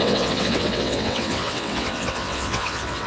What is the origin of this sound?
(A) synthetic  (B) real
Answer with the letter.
A